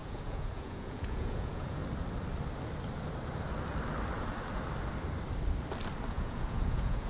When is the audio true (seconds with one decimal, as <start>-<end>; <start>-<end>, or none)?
1.8-6.1